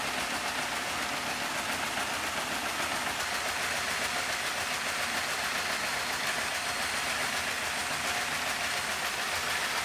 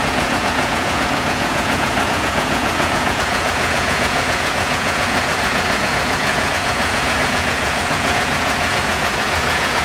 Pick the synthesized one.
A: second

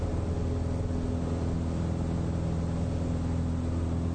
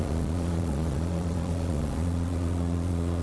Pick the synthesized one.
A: second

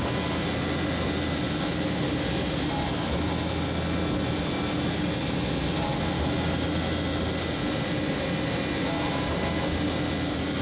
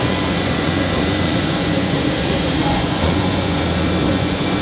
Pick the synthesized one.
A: second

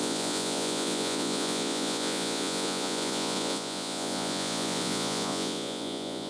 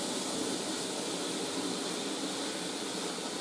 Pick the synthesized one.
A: first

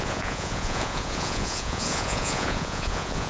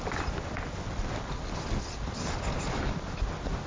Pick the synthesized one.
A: first